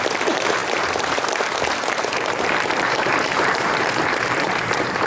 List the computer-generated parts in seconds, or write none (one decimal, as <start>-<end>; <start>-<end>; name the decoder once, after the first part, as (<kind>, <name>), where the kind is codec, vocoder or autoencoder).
0.0-5.1 (vocoder, BigVGAN v2)